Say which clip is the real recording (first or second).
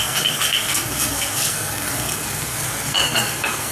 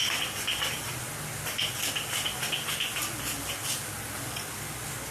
second